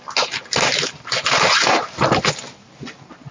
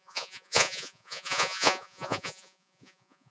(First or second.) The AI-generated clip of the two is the second